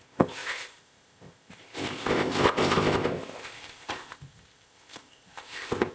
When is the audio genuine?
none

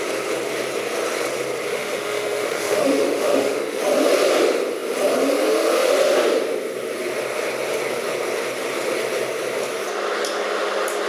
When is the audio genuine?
0.0-1.7; 3.8-11.1

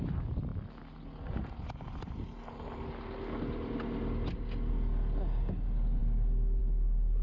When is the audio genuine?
0.0-7.2